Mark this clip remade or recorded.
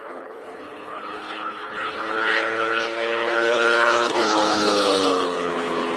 remade